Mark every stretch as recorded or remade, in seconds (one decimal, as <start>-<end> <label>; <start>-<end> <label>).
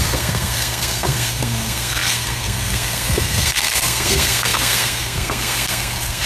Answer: 0.0-6.3 remade